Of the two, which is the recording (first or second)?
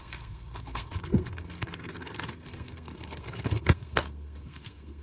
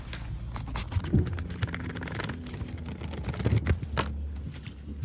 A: second